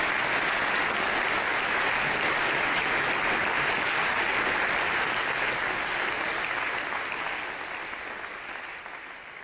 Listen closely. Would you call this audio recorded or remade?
recorded